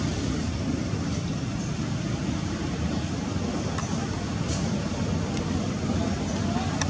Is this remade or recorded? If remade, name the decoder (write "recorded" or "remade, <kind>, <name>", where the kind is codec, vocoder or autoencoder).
remade, vocoder, BigVGAN v2